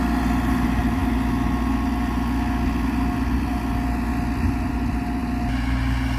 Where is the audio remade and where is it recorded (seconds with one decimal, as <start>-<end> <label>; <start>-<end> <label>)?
0.0-6.2 recorded